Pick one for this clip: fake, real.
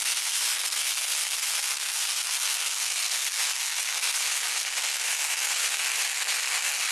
fake